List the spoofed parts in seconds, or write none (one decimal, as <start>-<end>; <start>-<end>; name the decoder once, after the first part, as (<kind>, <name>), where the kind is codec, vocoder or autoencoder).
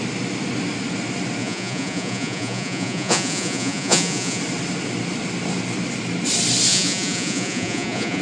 1.4-4.4 (vocoder, Vocos); 6.7-8.2